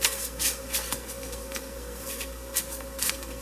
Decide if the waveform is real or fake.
fake